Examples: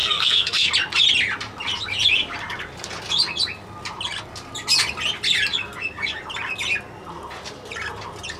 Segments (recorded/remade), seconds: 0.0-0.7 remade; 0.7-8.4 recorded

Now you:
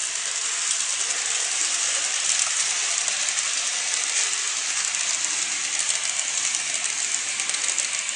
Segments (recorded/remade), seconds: 0.0-8.2 recorded

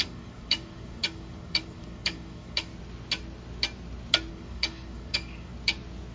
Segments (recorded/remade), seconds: 0.0-2.7 remade; 2.7-4.3 recorded; 4.3-5.5 remade; 5.5-6.1 recorded

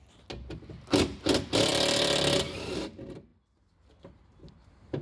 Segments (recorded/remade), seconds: 0.0-5.0 recorded